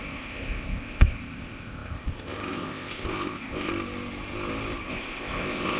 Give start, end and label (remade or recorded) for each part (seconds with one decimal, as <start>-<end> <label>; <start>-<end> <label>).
0.0-3.7 remade; 3.7-4.9 recorded; 4.9-5.8 remade